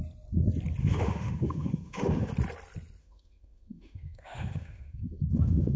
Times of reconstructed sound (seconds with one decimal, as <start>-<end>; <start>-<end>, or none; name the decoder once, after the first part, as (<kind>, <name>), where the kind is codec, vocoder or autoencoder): 0.8-2.3 (autoencoder, DAC-VAE); 3.0-5.8